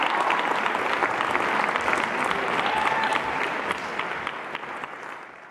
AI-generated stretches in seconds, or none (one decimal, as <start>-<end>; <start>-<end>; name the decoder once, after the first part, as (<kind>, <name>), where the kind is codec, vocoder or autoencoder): 3.1-4.3 (vocoder, BigVGAN v2)